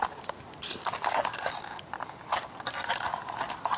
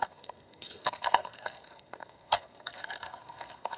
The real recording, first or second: first